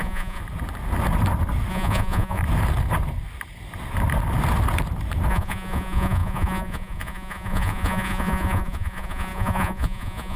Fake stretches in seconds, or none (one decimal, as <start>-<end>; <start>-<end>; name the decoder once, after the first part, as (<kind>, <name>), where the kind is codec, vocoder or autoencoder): 0.0-0.4 (vocoder, Vocos); 1.7-2.4; 5.3-10.4